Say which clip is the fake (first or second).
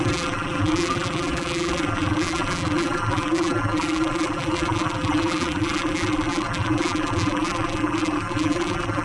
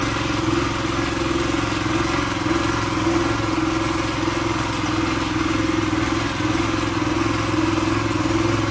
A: first